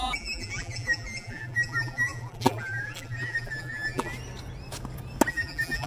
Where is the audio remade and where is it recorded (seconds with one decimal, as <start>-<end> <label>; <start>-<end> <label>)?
0.0-4.1 remade; 4.1-5.3 recorded; 5.3-5.9 remade